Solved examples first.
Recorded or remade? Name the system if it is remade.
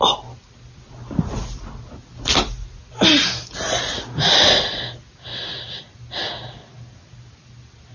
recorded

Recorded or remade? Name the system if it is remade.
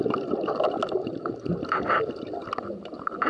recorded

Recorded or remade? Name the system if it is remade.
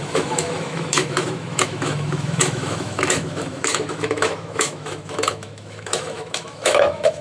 remade, autoencoder, DAC-VAE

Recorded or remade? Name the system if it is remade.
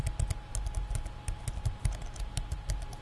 recorded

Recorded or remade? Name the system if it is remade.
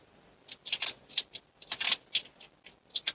recorded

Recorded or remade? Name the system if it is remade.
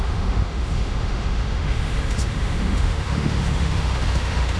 remade, autoencoder, DAC-VAE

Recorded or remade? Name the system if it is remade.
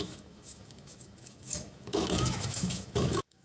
remade, autoencoder, DAC-VAE